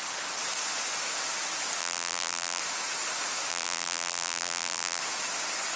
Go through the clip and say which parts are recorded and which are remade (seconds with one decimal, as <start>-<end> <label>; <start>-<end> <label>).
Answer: 0.0-1.8 recorded; 1.8-2.6 remade; 2.6-3.5 recorded; 3.5-5.0 remade; 5.0-5.8 recorded

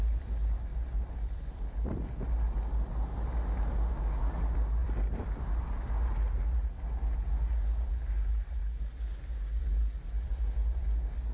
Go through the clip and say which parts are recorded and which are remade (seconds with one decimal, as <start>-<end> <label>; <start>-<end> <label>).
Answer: 0.0-0.7 recorded; 0.7-2.6 remade; 2.6-4.8 recorded; 4.8-5.6 remade; 5.6-11.3 recorded

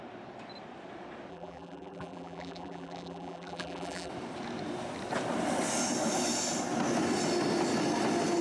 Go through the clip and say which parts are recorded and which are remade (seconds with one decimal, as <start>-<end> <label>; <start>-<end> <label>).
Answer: 0.0-1.3 recorded; 1.3-4.1 remade; 4.1-8.4 recorded

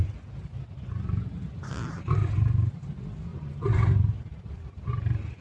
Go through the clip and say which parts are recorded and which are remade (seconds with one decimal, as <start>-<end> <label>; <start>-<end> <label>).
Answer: 0.0-2.2 recorded; 2.2-2.7 remade; 2.7-3.3 recorded; 3.3-4.9 remade; 4.9-5.4 recorded

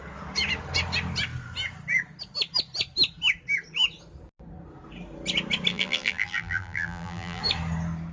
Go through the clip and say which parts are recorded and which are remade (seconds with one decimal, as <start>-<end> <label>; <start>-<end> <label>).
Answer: 0.0-5.7 recorded; 5.7-7.4 remade; 7.4-8.1 recorded

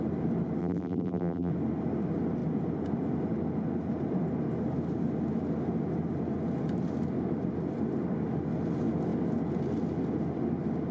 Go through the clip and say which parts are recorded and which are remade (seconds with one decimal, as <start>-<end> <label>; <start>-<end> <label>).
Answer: 0.0-0.6 recorded; 0.6-1.5 remade; 1.5-10.9 recorded